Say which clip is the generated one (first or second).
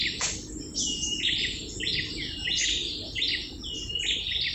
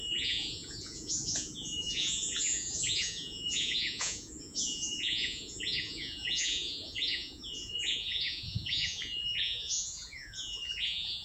second